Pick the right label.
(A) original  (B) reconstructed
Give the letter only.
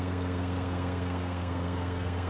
B